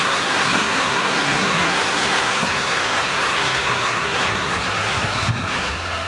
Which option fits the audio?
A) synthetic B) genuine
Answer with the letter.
A